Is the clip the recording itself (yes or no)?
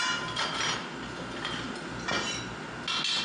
yes